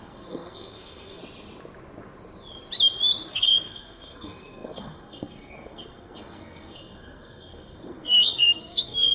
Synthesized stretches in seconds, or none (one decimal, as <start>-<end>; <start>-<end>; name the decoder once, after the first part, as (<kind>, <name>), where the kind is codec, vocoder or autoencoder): 0.0-1.2 (codec, SNAC); 3.3-9.1